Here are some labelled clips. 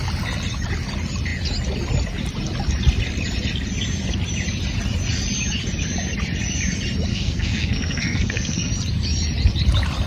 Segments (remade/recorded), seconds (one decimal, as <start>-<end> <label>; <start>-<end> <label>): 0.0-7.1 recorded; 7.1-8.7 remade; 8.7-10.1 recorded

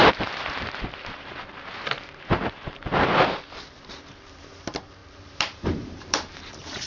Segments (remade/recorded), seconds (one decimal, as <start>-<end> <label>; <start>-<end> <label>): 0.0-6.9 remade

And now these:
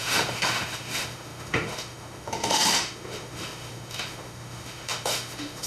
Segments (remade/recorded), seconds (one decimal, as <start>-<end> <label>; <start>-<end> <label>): 0.0-5.7 remade

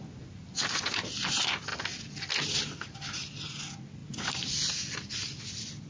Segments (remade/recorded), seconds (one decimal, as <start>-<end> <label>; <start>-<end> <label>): 0.0-5.9 recorded

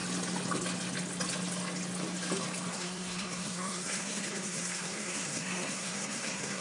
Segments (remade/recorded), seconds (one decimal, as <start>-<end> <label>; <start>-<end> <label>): 0.0-2.7 recorded; 2.7-6.6 remade

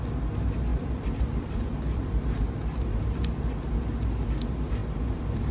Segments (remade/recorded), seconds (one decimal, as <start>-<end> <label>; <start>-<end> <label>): 0.0-0.7 recorded; 0.7-3.4 remade; 3.4-5.5 recorded